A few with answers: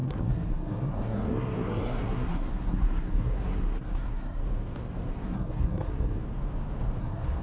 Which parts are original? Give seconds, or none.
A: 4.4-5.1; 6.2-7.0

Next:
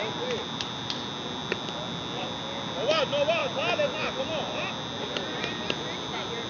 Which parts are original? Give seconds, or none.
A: 0.0-6.5

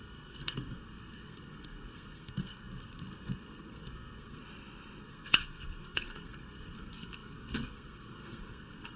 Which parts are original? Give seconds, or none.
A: 4.4-5.0

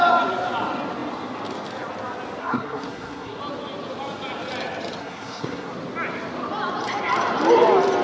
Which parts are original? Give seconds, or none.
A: 0.0-2.4; 3.4-5.0; 5.7-8.0